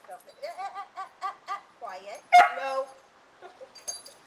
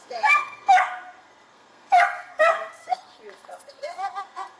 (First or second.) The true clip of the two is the first